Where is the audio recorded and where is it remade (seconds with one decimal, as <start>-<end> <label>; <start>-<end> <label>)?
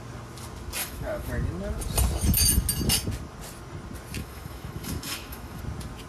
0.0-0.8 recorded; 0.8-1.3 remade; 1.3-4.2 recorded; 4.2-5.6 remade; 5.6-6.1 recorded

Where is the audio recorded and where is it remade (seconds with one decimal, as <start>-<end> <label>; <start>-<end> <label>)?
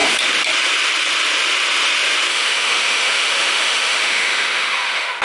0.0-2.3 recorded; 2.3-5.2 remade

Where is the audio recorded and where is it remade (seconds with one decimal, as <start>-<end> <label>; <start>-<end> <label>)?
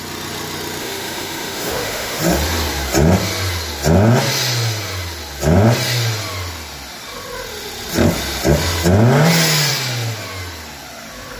0.0-0.8 recorded; 0.8-2.2 remade; 2.2-11.4 recorded